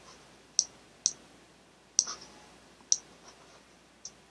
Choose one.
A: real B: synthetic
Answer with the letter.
A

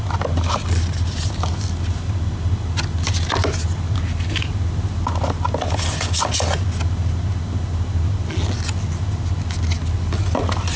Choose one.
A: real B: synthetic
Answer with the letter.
A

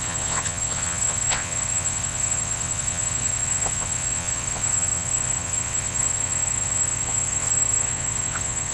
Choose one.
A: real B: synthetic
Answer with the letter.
B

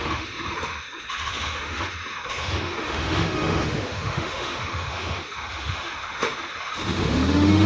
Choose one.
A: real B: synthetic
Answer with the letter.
B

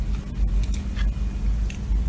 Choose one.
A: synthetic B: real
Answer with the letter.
B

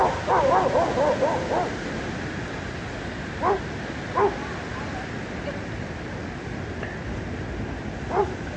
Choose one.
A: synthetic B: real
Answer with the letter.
B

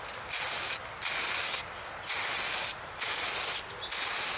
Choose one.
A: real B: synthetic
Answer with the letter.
A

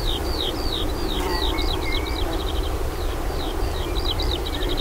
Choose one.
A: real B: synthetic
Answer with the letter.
B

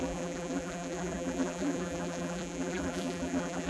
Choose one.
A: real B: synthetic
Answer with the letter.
B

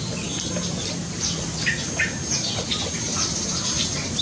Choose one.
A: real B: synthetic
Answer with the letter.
A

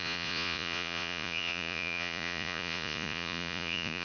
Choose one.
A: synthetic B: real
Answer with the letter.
A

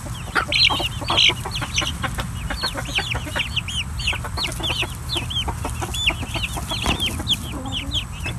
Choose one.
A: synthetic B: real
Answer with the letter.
B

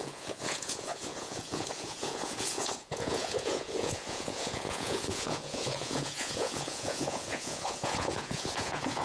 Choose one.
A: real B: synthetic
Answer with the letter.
B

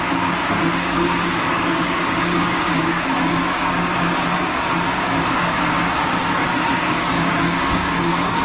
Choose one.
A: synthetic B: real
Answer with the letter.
A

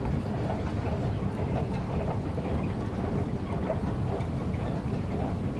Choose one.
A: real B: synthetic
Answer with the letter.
A